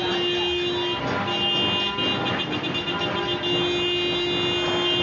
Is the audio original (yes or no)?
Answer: yes